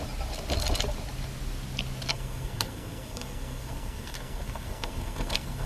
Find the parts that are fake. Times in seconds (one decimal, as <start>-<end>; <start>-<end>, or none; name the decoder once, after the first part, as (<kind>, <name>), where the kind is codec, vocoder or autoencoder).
2.1-5.7 (codec, SNAC)